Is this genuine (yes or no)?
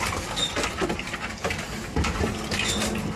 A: yes